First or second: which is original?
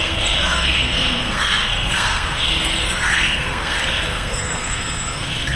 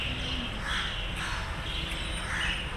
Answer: second